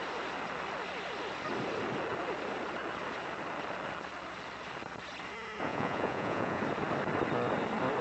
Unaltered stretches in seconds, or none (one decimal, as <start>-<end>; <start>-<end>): 0.0-5.7; 6.6-8.0